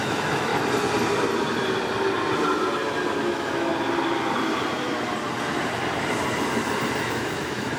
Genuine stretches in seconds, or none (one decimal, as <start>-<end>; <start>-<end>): 0.5-3.3; 3.7-7.0